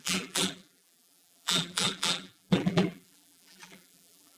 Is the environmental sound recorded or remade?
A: remade